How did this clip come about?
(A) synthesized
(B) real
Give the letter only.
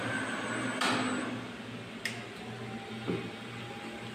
B